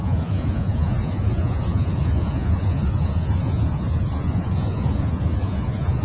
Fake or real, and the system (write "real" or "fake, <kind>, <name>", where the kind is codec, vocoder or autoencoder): fake, vocoder, Vocos